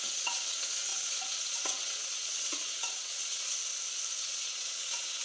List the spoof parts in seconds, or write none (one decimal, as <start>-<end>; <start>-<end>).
0.0-3.6; 4.2-5.2